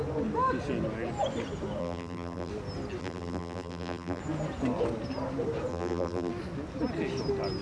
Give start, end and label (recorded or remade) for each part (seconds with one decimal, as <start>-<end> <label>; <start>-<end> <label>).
0.0-1.8 recorded; 1.8-2.5 remade; 2.5-3.0 recorded; 3.0-4.2 remade; 4.2-5.7 recorded; 5.7-6.3 remade; 6.3-7.6 recorded